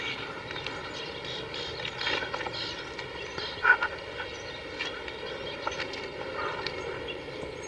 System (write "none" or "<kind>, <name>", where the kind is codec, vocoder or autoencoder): vocoder, BigVGAN v2